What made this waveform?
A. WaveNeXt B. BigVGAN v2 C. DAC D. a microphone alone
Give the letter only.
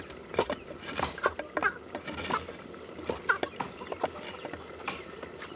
D